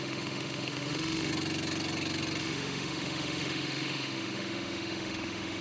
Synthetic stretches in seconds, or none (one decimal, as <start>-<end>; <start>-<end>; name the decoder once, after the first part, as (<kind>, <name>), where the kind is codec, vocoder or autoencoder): 0.0-1.3 (autoencoder, DAC-VAE); 2.4-5.6